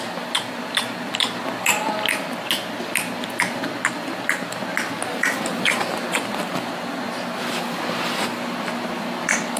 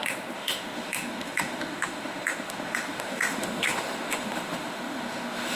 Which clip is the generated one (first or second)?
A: second